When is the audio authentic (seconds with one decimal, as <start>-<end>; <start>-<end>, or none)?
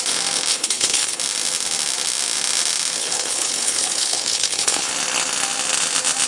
0.0-0.5; 1.2-3.0; 4.9-6.3